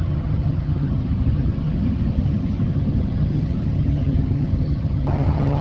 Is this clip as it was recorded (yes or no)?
no